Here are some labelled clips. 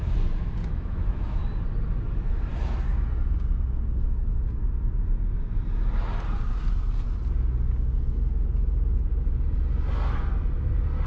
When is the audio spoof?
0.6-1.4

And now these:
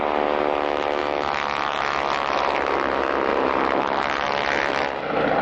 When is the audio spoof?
none

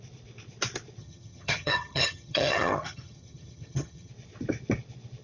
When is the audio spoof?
1.0-4.1

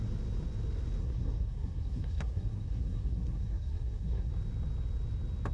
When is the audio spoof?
1.0-4.3